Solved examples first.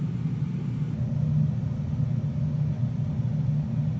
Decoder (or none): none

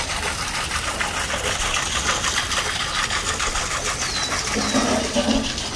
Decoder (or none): none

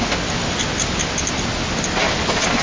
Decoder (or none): none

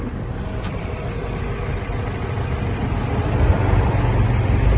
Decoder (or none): none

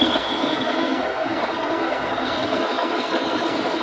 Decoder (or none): codec, SNAC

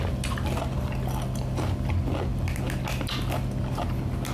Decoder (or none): none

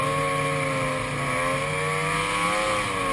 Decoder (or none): none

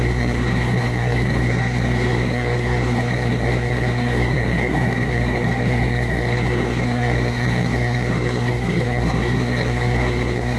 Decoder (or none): codec, SNAC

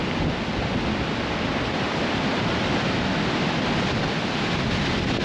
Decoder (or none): none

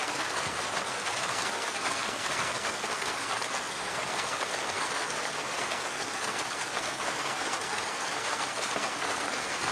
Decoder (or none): codec, SNAC